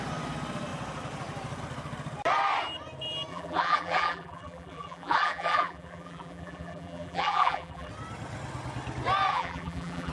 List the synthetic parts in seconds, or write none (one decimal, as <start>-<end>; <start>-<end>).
3.3-7.9; 9.3-10.1